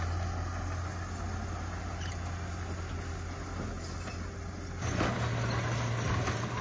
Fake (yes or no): no